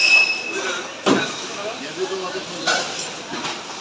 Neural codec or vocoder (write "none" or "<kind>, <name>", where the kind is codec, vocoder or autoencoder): none